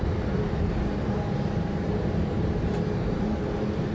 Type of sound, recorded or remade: remade